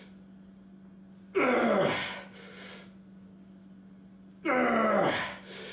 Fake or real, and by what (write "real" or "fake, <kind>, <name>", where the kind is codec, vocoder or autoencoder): real